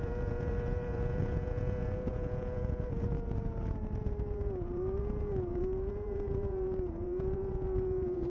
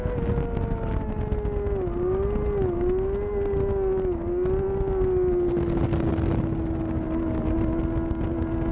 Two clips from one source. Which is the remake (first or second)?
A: first